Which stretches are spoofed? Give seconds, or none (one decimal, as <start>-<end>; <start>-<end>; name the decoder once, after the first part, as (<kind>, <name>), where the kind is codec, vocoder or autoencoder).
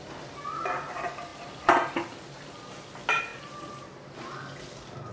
none